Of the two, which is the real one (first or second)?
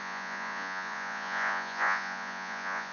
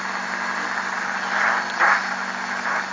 second